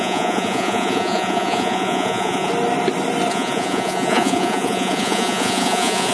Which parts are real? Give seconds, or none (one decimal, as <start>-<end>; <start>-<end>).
2.5-3.3

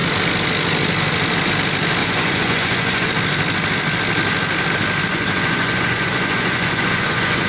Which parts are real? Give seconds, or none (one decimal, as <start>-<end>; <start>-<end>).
0.0-2.0; 3.1-5.1

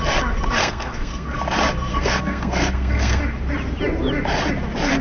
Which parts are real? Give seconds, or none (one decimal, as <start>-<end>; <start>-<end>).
0.0-0.6; 1.4-1.9; 3.2-5.0

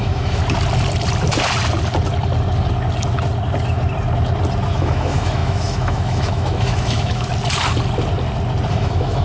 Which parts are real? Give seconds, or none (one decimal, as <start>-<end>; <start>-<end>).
0.4-4.7; 7.3-8.7